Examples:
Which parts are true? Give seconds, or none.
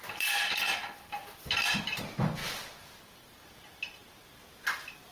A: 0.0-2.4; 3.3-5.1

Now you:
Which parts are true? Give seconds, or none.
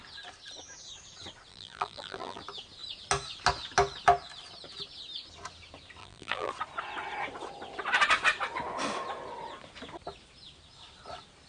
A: 0.0-1.5; 2.4-6.0; 6.5-11.5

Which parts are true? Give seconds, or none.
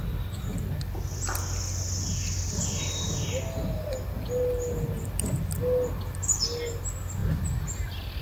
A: 0.0-8.2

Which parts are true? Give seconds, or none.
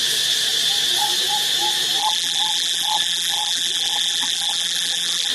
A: 0.0-2.0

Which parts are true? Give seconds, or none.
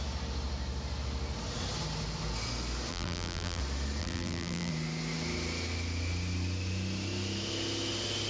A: 0.0-2.9; 3.6-4.0; 4.7-8.3